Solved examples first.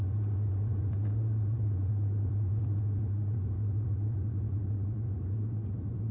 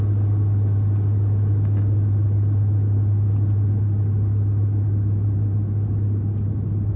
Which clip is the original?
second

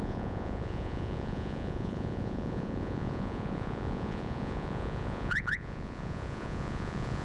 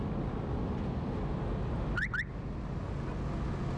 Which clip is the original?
second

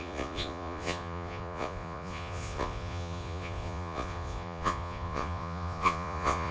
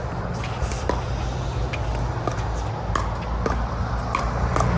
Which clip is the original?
second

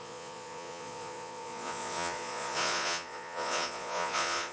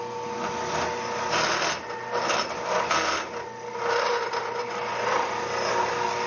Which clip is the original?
second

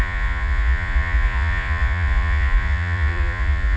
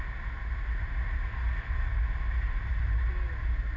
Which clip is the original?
second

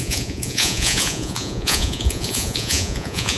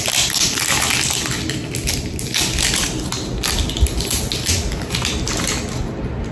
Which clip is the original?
second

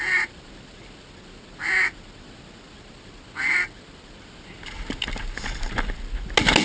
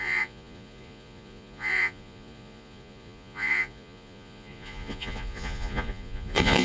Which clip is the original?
first